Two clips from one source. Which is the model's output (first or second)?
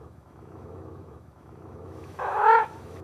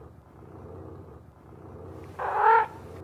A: first